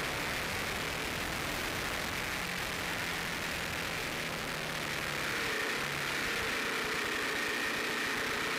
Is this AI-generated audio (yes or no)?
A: no